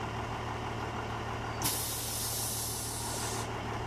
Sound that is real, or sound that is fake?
real